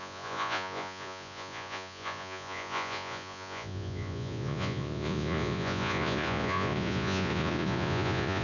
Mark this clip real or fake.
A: fake